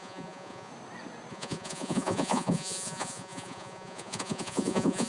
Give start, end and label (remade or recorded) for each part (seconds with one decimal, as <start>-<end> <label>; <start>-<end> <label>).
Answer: 0.0-0.7 remade; 0.7-1.3 recorded; 1.3-5.1 remade